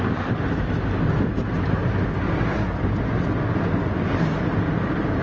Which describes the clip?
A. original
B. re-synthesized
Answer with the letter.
A